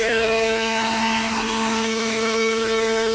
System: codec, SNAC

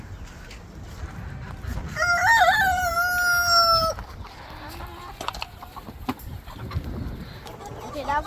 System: none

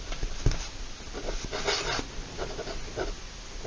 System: none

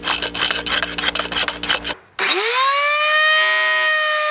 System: none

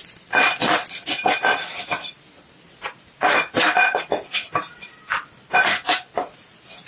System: none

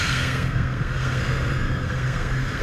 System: codec, SNAC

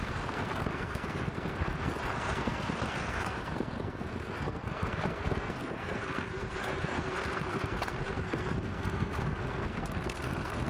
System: codec, SNAC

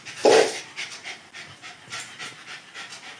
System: none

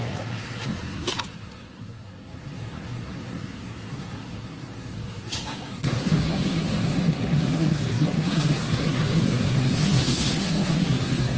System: codec, SNAC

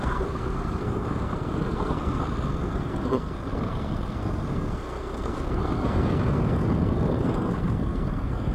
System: codec, SNAC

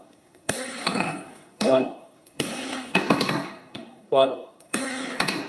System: codec, SNAC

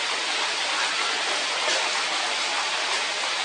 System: none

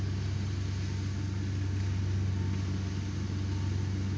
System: none